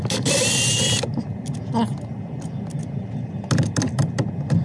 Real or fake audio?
real